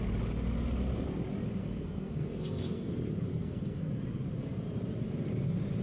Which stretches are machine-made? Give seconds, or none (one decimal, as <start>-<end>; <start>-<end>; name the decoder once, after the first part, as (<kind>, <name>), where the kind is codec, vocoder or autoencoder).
1.6-2.9 (codec, SNAC); 3.3-3.9